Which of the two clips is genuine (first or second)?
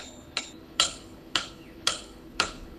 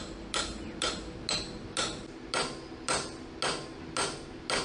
second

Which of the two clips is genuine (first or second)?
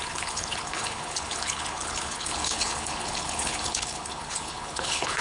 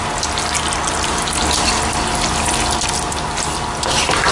second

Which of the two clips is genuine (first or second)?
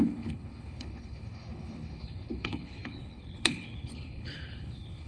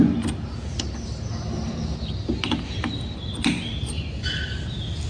second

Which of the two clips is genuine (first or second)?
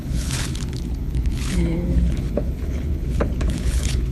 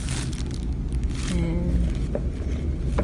second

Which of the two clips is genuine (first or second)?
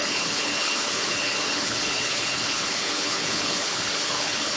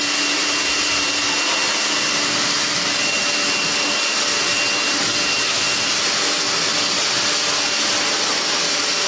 second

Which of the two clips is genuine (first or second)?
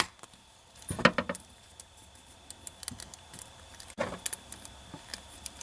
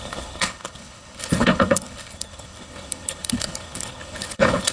first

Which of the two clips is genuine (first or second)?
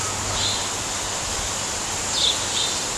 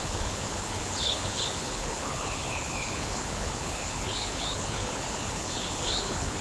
first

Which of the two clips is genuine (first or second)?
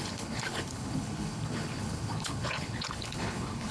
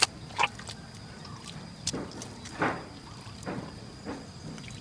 second